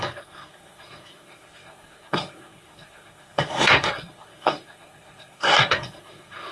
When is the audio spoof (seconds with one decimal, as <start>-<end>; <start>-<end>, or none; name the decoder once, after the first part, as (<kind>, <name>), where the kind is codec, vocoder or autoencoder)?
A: 0.0-6.5 (codec, SNAC)